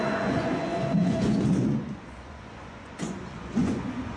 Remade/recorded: remade